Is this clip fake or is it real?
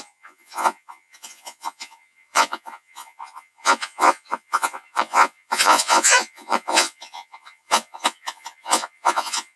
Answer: fake